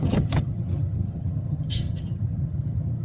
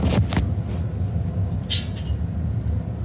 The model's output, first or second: first